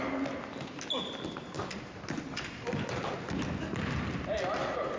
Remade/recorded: recorded